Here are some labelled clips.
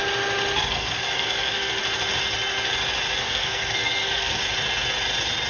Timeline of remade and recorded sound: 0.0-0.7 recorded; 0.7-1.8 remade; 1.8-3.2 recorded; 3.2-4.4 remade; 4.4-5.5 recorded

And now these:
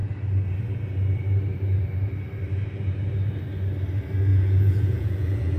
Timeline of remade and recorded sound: 0.0-4.3 recorded; 4.3-5.6 remade

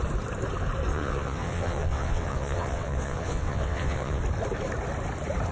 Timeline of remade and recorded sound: 0.0-0.9 recorded; 0.9-4.2 remade; 4.2-5.5 recorded

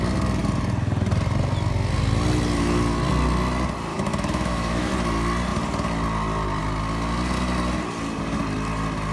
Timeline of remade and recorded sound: 0.0-3.9 recorded; 3.9-4.9 remade; 4.9-9.1 recorded

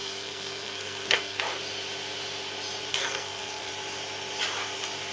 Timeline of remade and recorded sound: 0.0-1.4 remade; 1.4-2.9 recorded; 2.9-3.7 remade; 3.7-5.1 recorded

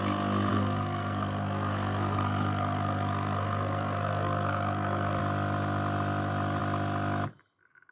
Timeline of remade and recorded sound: 0.0-0.5 recorded; 0.5-5.2 remade; 5.2-7.9 recorded